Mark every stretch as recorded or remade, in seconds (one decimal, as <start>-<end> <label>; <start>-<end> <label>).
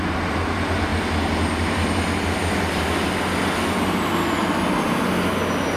0.0-5.8 recorded